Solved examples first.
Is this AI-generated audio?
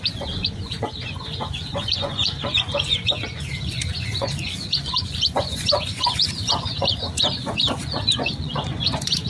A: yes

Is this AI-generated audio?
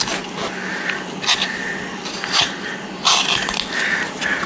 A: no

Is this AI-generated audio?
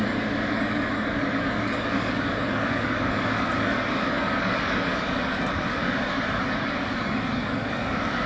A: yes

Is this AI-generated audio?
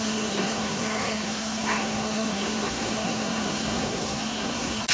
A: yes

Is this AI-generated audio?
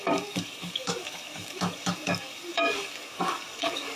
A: yes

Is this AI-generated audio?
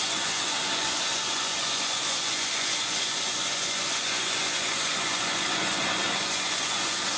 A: yes